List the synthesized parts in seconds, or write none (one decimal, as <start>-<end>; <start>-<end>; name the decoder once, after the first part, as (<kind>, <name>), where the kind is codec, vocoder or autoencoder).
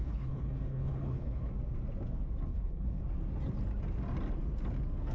0.0-1.5 (codec, HILCodec); 2.5-3.0